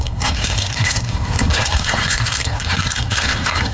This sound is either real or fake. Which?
fake